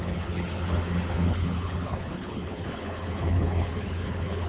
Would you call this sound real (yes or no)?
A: no